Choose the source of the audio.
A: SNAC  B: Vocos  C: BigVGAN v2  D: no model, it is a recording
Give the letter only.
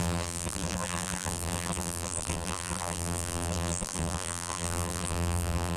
C